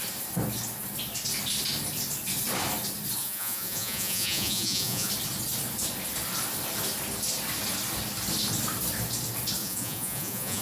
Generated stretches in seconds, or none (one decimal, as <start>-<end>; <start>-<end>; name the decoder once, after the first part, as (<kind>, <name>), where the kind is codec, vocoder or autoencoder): 3.2-5.1 (vocoder, Vocos); 9.6-10.6